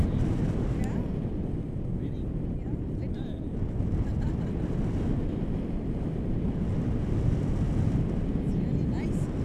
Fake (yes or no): no